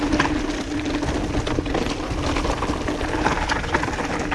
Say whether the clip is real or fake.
real